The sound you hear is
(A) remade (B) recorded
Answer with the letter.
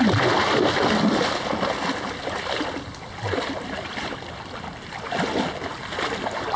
B